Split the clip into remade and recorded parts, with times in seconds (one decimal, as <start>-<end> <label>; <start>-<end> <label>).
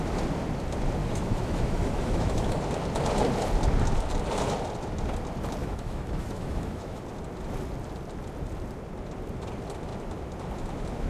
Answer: 0.0-1.0 recorded; 1.0-2.6 remade; 2.6-5.6 recorded; 5.6-7.0 remade; 7.0-11.1 recorded